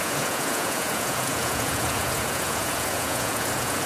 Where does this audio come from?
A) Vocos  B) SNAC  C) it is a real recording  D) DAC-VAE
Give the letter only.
A